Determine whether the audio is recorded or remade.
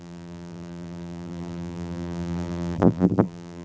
remade